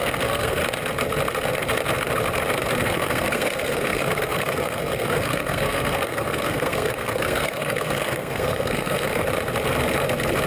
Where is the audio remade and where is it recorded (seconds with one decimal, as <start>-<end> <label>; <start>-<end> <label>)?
0.0-0.6 remade; 0.6-2.8 recorded; 2.8-9.2 remade; 9.2-10.5 recorded

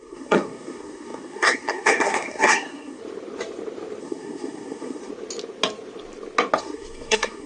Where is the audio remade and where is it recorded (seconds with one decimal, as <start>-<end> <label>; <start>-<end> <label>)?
0.0-3.0 remade; 3.0-4.0 recorded; 4.0-5.1 remade; 5.1-6.6 recorded; 6.6-7.5 remade

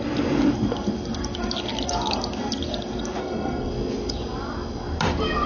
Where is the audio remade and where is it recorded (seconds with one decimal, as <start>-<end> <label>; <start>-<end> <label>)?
0.0-3.2 recorded; 3.2-3.7 remade; 3.7-5.5 recorded

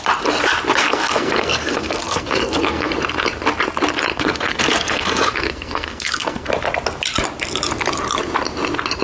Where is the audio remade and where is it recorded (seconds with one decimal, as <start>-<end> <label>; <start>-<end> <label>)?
0.0-0.8 recorded; 0.8-2.9 remade; 2.9-4.1 recorded; 4.1-6.5 remade; 6.5-9.0 recorded

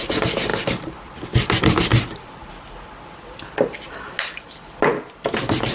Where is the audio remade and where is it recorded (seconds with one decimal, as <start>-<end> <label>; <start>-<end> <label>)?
0.0-5.7 recorded